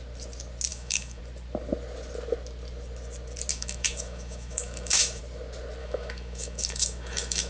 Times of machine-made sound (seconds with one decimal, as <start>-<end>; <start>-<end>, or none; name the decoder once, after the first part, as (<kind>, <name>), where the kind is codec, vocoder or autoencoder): 0.7-1.2 (autoencoder, DAC-VAE); 3.5-5.2; 5.8-7.5

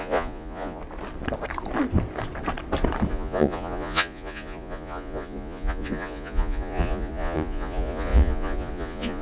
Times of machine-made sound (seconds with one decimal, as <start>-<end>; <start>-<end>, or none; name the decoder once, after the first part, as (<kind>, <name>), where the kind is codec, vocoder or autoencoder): 0.0-0.8 (vocoder, Vocos); 3.1-9.2